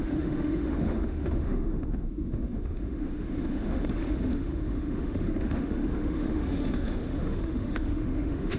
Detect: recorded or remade remade